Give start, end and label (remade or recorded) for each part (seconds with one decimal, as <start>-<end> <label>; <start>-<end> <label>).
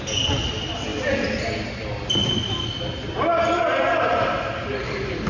0.0-0.9 recorded; 0.9-1.4 remade; 1.4-5.3 recorded